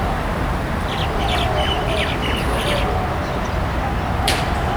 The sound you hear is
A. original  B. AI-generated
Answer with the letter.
A